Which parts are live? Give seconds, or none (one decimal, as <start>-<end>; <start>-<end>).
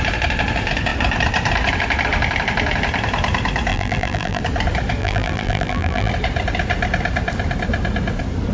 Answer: 0.0-3.7; 4.4-5.0; 6.1-8.5